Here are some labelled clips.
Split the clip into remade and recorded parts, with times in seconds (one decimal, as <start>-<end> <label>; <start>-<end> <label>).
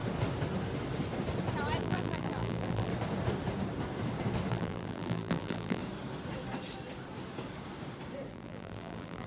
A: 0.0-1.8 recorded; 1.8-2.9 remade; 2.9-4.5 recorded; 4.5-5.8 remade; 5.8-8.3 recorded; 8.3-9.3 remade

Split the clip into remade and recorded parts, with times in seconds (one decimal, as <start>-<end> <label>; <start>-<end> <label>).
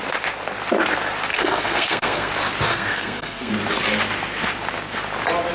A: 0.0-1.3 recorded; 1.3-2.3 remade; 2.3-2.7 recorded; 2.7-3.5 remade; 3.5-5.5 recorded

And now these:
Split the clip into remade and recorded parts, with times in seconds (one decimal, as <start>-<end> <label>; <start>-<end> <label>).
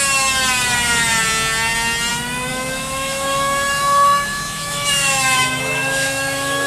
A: 0.0-2.5 recorded; 2.5-6.7 remade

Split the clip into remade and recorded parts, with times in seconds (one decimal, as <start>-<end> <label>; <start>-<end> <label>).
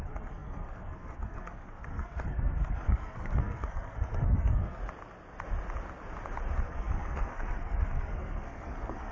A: 0.0-4.8 remade; 4.8-6.6 recorded; 6.6-9.1 remade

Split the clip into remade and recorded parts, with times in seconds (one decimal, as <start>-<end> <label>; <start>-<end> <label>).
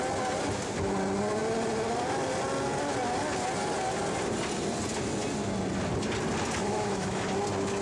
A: 0.0-6.6 recorded; 6.6-7.3 remade; 7.3-7.8 recorded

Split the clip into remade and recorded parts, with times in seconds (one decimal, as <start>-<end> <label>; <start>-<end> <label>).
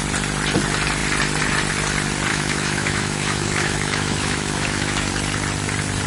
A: 0.0-2.3 recorded; 2.3-5.1 remade; 5.1-6.1 recorded